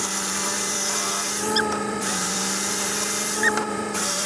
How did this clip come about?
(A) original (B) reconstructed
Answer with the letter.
B